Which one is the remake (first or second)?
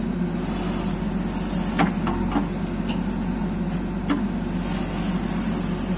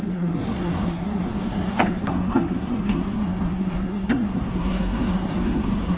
second